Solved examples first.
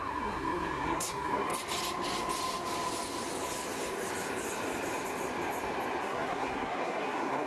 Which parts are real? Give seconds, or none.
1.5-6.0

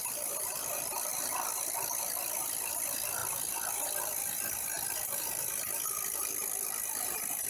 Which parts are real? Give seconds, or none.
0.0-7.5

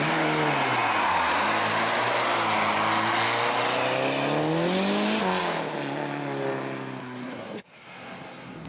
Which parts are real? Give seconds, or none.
0.0-7.0